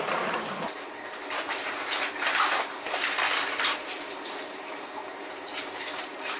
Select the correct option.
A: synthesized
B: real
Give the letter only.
A